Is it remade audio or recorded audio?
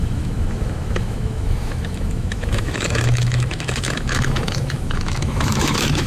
remade